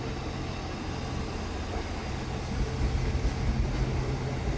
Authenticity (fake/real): real